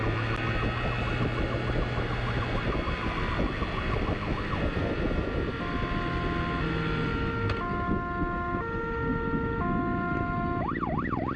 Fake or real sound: real